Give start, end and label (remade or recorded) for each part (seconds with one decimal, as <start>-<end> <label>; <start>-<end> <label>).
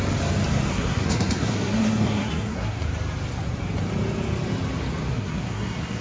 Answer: 0.0-0.7 recorded; 0.7-2.8 remade; 2.8-5.1 recorded; 5.1-6.0 remade